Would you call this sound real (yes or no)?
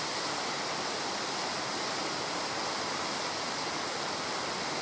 yes